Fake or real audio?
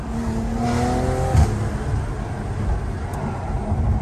real